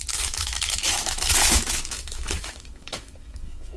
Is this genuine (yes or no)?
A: no